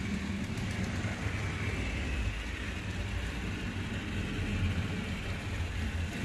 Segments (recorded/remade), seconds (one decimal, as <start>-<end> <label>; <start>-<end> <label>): 0.0-6.2 recorded